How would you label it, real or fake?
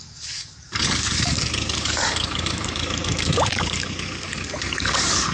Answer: fake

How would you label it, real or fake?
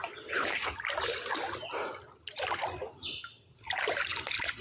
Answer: real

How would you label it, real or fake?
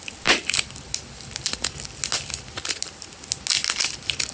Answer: real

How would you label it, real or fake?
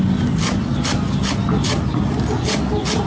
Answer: real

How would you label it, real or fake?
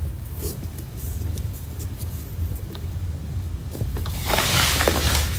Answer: fake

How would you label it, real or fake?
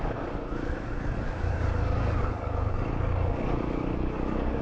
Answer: fake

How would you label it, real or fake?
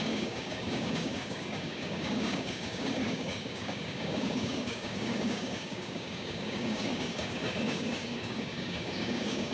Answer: fake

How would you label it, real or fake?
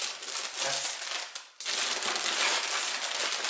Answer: real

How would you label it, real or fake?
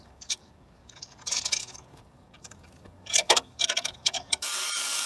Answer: fake